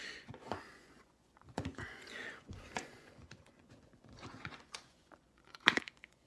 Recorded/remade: remade